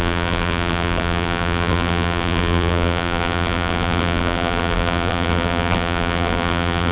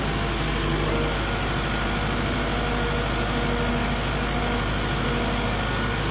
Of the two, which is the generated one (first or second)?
first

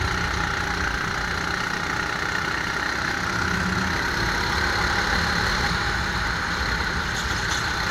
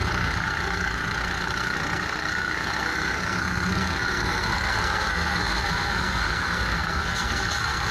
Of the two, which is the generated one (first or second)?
second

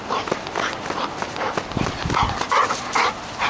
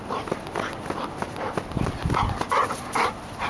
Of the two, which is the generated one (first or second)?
second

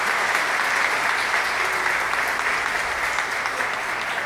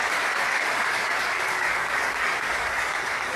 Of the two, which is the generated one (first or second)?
second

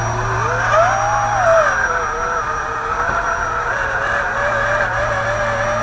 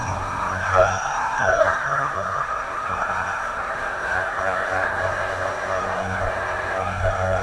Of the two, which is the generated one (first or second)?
second